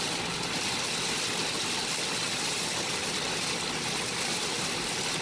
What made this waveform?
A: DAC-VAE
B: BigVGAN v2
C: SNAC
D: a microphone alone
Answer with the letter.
D